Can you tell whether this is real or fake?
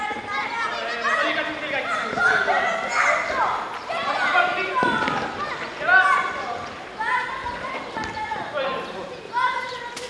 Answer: real